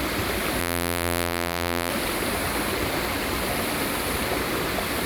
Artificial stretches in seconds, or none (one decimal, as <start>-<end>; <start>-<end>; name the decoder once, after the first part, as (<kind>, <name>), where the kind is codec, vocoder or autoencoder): 0.6-1.9 (vocoder, BigVGAN v2)